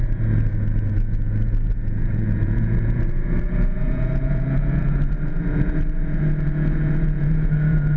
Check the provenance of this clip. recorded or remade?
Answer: remade